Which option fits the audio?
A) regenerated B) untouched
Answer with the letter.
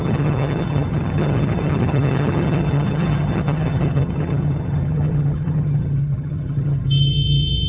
A